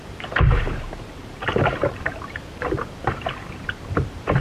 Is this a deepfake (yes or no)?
yes